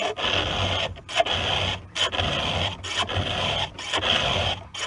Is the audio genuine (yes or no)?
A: yes